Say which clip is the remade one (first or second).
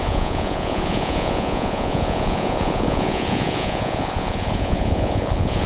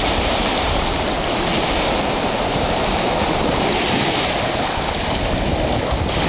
first